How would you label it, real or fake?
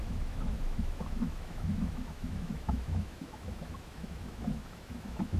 fake